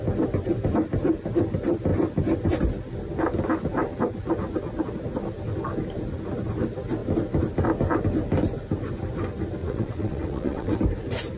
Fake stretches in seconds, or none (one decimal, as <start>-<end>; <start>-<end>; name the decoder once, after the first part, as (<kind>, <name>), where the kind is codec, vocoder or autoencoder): 9.6-10.8 (vocoder, WaveNeXt)

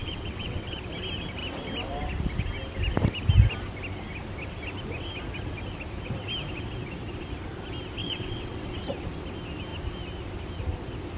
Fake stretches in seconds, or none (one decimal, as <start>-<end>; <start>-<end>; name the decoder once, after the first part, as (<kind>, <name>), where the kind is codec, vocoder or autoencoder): 0.0-0.8 (vocoder, WaveNeXt); 8.0-8.8